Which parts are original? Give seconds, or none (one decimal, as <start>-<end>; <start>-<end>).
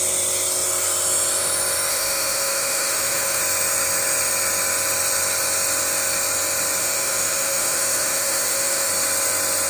0.0-1.9; 3.4-6.8; 8.9-9.7